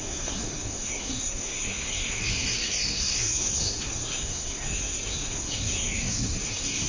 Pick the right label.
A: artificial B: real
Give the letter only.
A